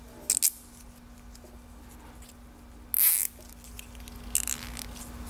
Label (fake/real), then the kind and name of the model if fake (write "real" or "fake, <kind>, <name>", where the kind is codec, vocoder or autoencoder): real